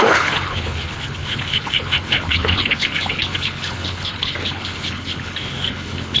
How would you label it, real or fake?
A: fake